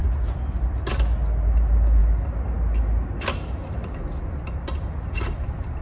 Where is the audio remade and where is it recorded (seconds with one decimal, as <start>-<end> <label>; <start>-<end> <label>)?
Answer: 0.0-5.8 recorded

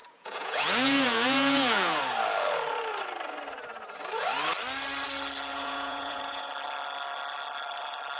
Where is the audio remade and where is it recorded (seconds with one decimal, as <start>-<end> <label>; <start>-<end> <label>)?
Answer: 0.0-2.0 remade; 2.0-5.5 recorded; 5.5-6.5 remade; 6.5-8.2 recorded

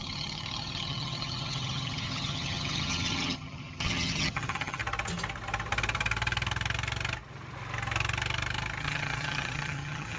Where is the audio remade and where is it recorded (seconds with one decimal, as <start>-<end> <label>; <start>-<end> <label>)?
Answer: 0.0-4.8 remade; 4.8-8.8 recorded; 8.8-10.2 remade

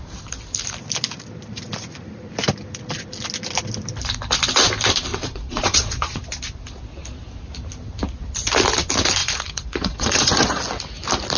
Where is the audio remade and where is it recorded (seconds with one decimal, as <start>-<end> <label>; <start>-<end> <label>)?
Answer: 0.0-5.1 recorded; 5.1-6.2 remade; 6.2-9.2 recorded; 9.2-10.6 remade; 10.6-11.4 recorded

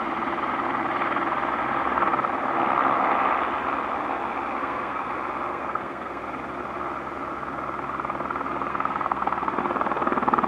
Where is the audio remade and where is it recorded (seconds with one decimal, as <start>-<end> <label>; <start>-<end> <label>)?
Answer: 0.0-4.6 recorded; 4.6-5.1 remade; 5.1-5.5 recorded; 5.5-6.2 remade; 6.2-8.7 recorded; 8.7-9.6 remade; 9.6-10.5 recorded